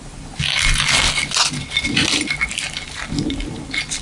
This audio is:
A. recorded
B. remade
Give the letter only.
A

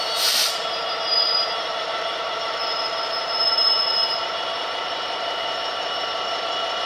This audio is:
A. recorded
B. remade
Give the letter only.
B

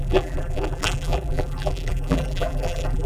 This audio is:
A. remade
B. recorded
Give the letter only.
A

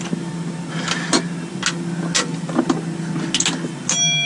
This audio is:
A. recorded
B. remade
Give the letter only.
A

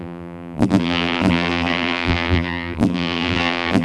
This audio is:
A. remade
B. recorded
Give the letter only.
A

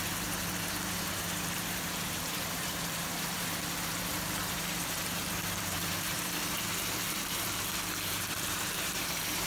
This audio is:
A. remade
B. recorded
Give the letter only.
A